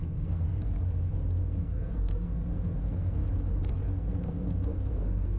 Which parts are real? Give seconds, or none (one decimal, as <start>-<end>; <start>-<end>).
3.2-3.7

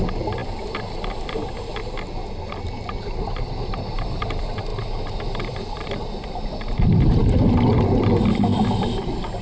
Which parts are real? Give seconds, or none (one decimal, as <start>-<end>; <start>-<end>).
0.0-9.4